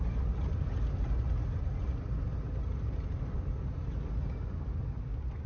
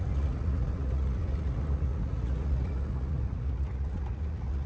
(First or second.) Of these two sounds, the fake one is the second